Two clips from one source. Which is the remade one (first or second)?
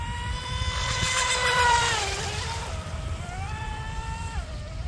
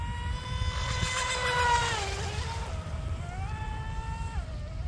first